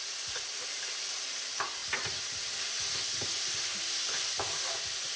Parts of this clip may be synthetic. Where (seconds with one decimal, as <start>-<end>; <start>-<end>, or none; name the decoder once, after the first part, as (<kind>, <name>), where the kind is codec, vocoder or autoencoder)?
none